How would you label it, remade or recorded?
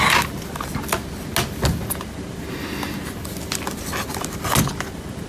recorded